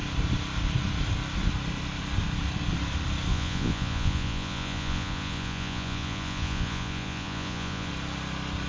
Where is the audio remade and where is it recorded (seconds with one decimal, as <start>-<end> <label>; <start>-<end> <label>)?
0.0-3.3 recorded; 3.3-7.9 remade; 7.9-8.7 recorded